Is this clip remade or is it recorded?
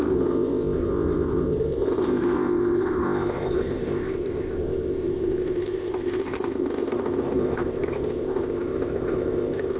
remade